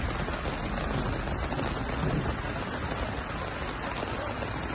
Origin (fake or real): real